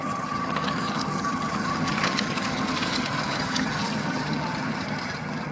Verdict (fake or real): fake